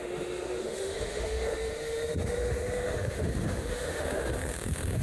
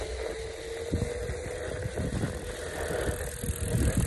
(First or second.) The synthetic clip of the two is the first